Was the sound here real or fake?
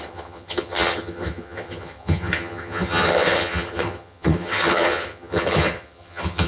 fake